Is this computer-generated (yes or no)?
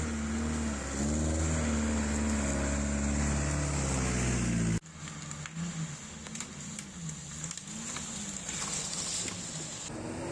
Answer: no